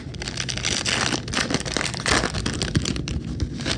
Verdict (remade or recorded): recorded